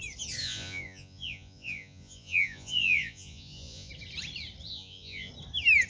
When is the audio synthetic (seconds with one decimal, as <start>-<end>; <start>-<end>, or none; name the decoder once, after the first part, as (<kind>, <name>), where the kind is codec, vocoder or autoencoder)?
0.4-3.9 (vocoder, Vocos); 4.7-5.3